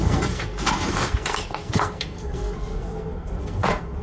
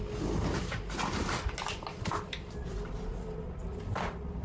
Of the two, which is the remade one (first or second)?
first